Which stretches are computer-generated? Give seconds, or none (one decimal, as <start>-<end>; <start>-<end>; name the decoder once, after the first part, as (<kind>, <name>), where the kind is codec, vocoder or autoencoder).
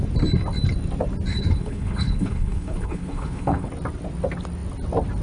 1.3-3.7 (codec, HILCodec)